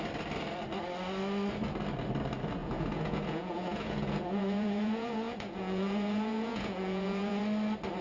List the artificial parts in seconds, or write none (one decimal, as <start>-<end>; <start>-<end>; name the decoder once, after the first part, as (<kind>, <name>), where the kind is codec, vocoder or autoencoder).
2.6-7.4 (vocoder, Vocos)

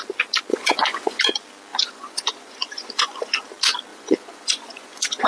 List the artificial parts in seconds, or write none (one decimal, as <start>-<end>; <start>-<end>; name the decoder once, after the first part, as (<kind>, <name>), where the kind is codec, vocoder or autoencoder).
0.5-1.2 (vocoder, Vocos); 1.7-3.4; 3.9-5.3